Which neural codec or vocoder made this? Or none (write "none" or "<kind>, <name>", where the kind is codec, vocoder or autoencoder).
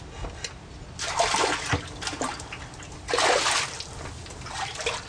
none